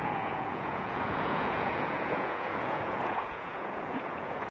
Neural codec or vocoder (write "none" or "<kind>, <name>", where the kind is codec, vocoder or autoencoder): vocoder, Vocos